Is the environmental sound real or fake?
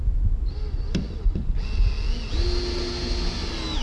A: real